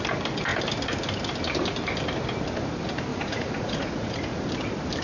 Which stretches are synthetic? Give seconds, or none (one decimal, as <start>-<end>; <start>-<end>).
3.1-4.4